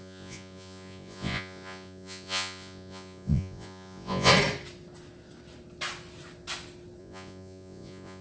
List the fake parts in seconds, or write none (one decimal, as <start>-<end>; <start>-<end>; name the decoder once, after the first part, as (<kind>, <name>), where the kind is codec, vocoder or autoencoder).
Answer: 0.0-4.3 (vocoder, Vocos); 7.0-8.2